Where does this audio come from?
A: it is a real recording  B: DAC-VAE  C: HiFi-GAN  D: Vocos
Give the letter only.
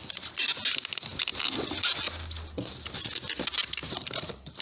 A